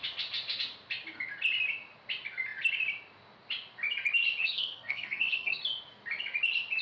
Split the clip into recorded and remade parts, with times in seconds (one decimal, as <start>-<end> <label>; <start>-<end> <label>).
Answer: 0.0-4.4 recorded; 4.4-5.6 remade; 5.6-6.8 recorded